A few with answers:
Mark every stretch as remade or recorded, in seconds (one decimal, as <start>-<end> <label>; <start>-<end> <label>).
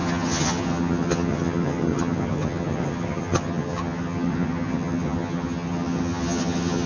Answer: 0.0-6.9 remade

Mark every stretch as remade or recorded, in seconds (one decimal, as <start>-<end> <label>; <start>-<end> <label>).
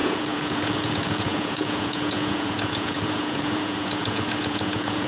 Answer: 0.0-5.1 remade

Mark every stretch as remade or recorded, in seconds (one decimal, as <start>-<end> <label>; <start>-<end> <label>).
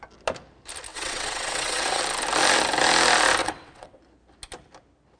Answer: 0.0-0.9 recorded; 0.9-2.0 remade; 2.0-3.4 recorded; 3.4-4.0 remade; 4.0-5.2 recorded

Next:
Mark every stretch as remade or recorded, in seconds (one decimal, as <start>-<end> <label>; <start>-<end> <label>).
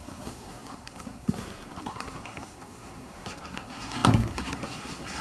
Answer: 0.0-5.2 remade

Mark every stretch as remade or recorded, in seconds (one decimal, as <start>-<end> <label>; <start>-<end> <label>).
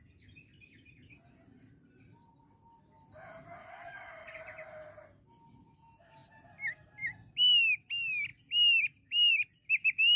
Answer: 0.0-3.6 recorded; 3.6-4.4 remade; 4.4-10.2 recorded